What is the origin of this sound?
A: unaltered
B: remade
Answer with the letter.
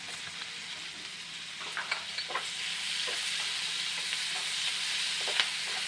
A